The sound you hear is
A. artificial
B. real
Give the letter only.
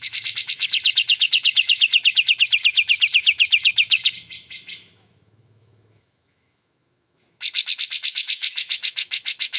A